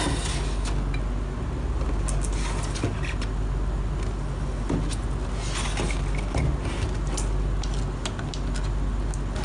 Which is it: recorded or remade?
recorded